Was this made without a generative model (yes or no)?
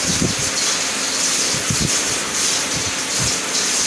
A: yes